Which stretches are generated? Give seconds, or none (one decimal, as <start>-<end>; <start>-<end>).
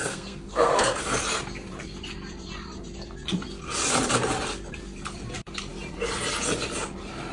0.0-1.0